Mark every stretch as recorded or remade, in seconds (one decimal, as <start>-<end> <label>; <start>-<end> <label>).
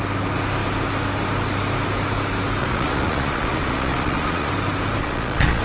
0.0-2.6 recorded; 2.6-4.5 remade; 4.5-5.0 recorded; 5.0-5.6 remade